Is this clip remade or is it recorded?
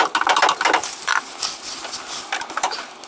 recorded